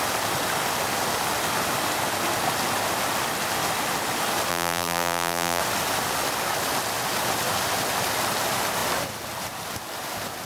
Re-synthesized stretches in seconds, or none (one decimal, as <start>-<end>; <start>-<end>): 4.5-5.6